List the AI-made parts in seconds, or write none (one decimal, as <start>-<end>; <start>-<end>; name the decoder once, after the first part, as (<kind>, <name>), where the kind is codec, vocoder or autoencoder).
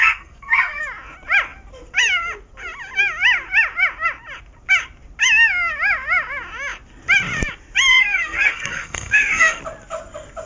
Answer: 0.0-0.8 (codec, SNAC); 7.9-9.6